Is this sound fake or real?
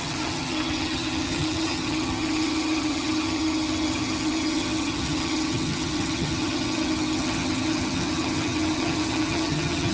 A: fake